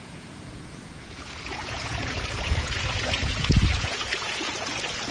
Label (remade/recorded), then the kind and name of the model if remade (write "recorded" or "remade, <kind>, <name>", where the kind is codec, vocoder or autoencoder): remade, vocoder, Vocos